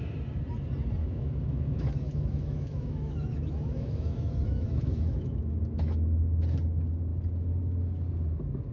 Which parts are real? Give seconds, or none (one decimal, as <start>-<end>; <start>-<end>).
0.0-1.0; 6.2-8.7